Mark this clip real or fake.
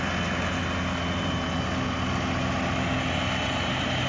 real